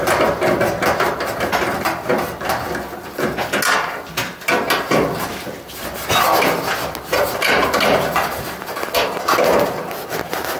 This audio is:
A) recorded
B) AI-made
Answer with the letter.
A